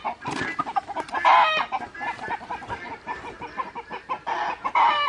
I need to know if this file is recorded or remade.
recorded